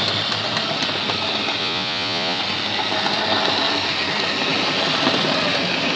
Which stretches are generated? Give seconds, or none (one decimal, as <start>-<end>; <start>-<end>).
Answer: 1.6-2.4